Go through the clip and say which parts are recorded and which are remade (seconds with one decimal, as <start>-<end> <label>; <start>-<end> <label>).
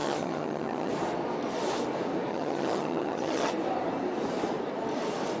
0.0-0.9 remade; 0.9-2.3 recorded; 2.3-3.5 remade; 3.5-5.4 recorded